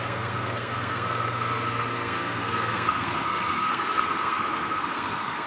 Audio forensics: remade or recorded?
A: remade